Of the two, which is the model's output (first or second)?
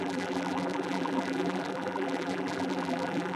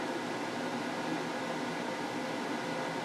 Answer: first